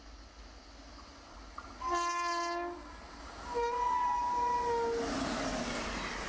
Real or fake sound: real